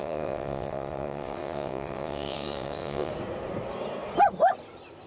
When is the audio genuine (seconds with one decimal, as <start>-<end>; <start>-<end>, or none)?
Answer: 3.1-5.1